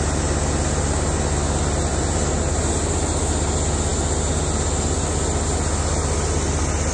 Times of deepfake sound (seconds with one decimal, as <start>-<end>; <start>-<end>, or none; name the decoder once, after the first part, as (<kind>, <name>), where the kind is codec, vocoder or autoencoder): 1.9-2.7 (vocoder, BigVGAN v2)